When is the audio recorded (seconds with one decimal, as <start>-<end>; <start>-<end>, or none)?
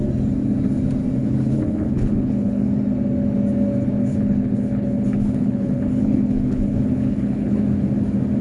0.0-1.2; 2.7-4.0; 7.6-8.4